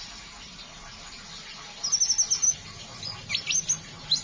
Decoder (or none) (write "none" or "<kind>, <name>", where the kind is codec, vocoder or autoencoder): none